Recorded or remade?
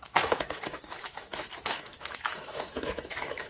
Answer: remade